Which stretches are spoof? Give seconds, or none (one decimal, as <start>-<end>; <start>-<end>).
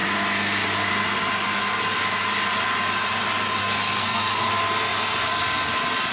3.6-4.5